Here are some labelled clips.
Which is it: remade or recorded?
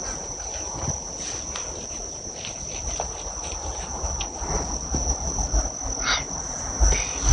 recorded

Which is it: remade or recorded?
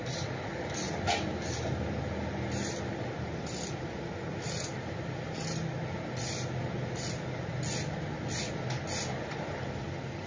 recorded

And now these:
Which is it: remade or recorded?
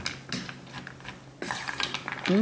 recorded